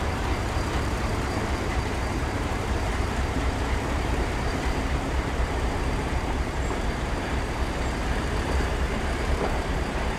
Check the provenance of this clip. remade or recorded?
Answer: remade